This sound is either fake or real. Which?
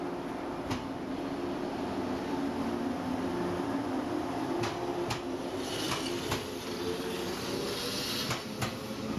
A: real